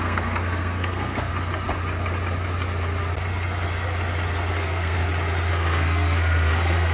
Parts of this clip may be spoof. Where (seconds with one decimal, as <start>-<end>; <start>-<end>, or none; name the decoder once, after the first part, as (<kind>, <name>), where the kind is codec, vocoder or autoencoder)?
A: 0.0-1.3 (codec, SNAC); 4.5-5.0; 5.5-6.9